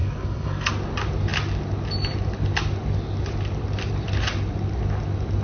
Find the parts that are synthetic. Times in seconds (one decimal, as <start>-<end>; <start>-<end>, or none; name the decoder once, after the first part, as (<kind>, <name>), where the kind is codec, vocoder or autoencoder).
0.0-0.7 (codec, SNAC)